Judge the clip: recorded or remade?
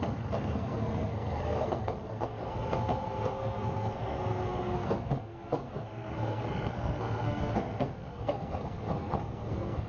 remade